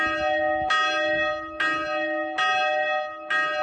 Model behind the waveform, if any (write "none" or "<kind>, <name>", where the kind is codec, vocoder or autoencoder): none